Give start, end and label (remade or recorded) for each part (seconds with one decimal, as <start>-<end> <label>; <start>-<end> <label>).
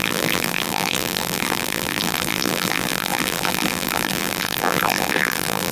0.0-5.7 remade